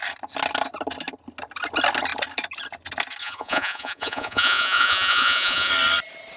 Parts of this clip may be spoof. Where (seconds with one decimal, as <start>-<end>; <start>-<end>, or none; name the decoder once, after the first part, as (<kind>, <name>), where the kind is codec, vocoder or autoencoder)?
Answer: 3.2-5.7 (vocoder, Vocos)